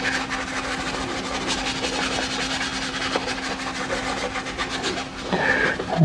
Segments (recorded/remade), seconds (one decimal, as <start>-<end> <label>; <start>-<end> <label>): 0.0-6.0 recorded